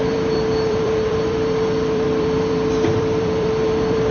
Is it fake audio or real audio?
fake